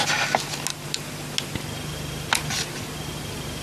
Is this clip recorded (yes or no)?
yes